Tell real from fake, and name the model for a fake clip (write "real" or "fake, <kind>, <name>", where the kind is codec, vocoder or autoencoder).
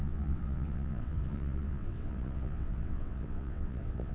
fake, vocoder, WaveNeXt